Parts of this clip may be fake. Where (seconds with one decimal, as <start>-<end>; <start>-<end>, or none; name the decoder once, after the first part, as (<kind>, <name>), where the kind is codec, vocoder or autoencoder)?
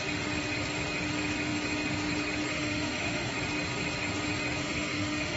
2.5-3.3 (autoencoder, DAC-VAE); 4.6-5.4